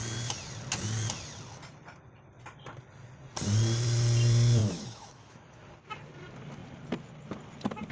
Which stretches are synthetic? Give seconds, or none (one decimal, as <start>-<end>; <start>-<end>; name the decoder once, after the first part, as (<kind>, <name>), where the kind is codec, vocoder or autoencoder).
4.6-5.6 (autoencoder, DAC-VAE)